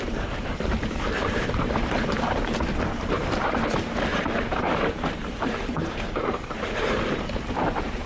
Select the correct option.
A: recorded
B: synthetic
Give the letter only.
B